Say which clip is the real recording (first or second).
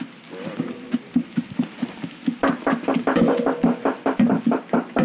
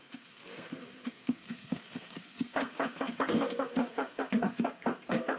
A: first